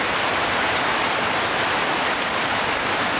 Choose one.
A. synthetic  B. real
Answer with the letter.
A